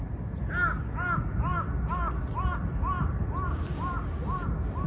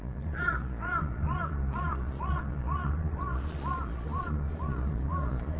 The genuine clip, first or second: first